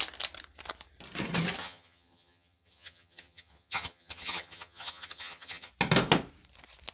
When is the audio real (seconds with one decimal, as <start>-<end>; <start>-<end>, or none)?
0.0-1.6; 5.7-6.9